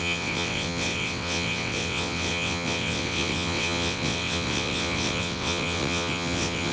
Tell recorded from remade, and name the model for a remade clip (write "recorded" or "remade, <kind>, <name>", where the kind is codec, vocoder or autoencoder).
remade, vocoder, WaveNeXt